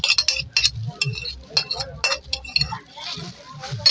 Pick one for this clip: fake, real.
real